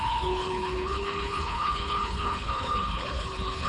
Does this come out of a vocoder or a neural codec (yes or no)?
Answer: yes